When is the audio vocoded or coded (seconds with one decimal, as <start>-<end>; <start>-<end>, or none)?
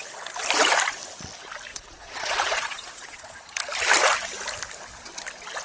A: 1.7-3.6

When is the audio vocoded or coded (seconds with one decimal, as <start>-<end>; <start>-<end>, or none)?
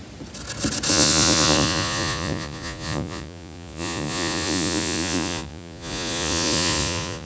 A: 0.9-7.2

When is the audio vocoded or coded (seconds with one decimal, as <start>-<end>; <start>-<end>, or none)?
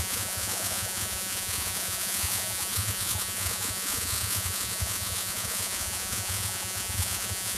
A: 0.0-7.6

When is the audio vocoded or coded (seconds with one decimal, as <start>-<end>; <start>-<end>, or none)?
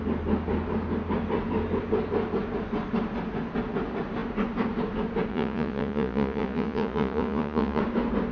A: 5.3-7.8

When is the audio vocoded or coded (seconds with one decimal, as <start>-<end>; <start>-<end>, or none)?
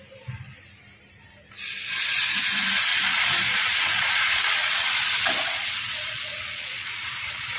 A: 2.9-7.6